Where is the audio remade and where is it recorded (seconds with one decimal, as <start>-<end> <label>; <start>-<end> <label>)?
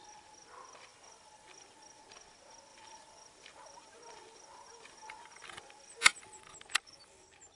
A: 0.0-0.9 recorded; 0.9-2.0 remade; 2.0-2.7 recorded; 2.7-6.2 remade; 6.2-7.6 recorded